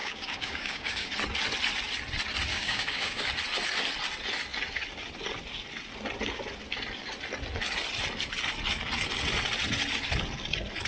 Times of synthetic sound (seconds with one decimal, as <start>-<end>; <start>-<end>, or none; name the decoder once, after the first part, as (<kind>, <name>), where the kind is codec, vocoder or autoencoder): 0.0-1.1 (codec, DAC); 2.5-3.2